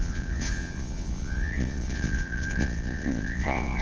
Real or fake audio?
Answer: fake